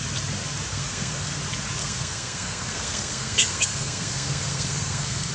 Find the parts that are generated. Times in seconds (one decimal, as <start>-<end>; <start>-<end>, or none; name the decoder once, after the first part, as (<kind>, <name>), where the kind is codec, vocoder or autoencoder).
0.7-1.4 (codec, SNAC); 1.8-5.3